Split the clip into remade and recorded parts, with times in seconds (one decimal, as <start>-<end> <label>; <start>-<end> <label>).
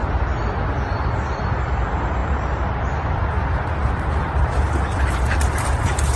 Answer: 0.0-6.2 recorded